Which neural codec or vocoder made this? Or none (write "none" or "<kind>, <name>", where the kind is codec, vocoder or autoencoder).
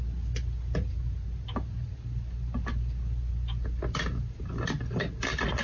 none